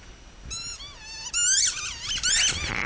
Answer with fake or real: real